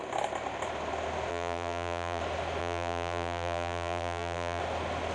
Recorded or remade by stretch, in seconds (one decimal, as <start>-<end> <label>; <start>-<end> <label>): 0.0-1.3 recorded; 1.3-2.2 remade; 2.2-2.6 recorded; 2.6-4.6 remade; 4.6-5.1 recorded